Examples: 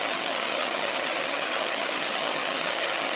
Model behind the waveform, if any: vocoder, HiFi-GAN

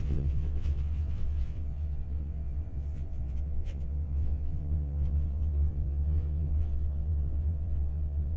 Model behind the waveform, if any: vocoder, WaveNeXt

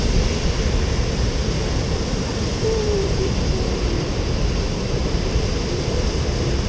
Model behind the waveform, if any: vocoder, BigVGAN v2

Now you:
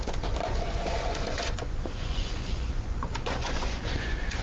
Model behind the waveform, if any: vocoder, Vocos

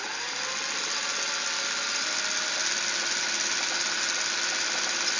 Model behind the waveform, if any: none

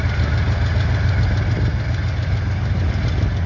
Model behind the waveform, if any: none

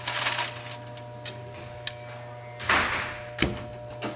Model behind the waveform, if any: none